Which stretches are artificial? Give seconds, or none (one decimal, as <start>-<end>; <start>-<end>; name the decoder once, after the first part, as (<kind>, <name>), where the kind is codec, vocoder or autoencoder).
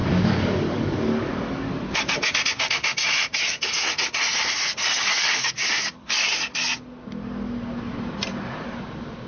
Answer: 0.0-1.3 (codec, DAC); 5.1-6.3